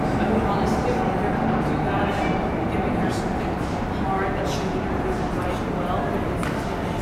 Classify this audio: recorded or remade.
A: recorded